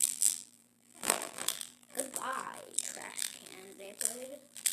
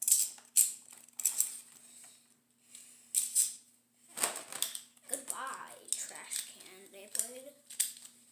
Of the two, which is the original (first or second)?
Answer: second